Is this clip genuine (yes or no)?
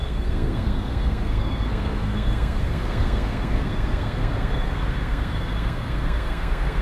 no